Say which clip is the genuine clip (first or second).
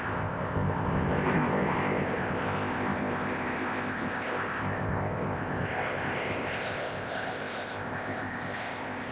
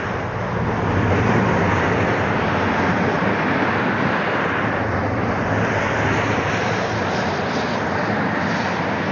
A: second